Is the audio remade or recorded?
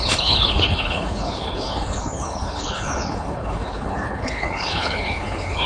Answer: remade